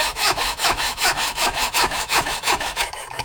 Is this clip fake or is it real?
fake